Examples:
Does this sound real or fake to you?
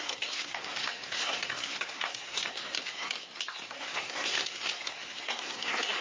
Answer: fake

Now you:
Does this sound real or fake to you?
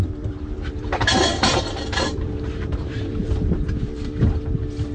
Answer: fake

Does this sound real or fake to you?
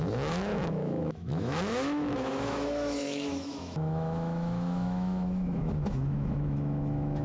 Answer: fake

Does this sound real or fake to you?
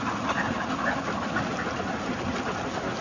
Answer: real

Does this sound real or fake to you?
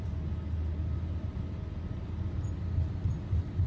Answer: real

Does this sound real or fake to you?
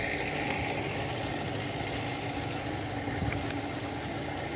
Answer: real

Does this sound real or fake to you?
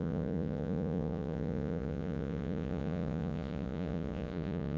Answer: fake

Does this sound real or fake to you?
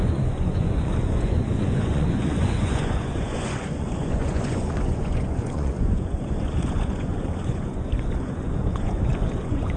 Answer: fake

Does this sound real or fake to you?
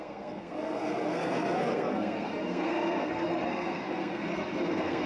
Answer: fake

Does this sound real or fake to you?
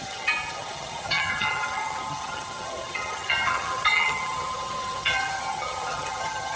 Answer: fake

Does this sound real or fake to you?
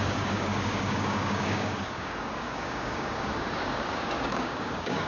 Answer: fake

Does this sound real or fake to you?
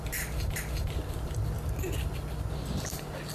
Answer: real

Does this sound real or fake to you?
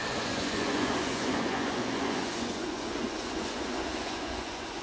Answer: fake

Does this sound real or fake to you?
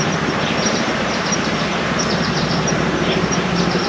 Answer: fake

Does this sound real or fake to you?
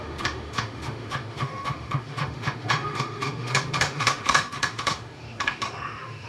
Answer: fake